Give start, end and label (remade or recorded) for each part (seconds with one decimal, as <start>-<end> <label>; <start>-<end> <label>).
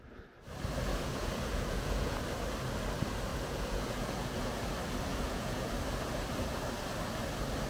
0.0-0.9 recorded; 0.9-2.2 remade; 2.2-3.3 recorded; 3.3-4.6 remade; 4.6-5.1 recorded; 5.1-5.7 remade; 5.7-7.7 recorded